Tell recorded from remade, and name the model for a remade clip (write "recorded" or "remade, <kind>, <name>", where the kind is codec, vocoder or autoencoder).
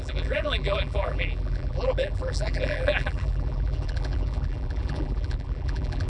remade, vocoder, BigVGAN v2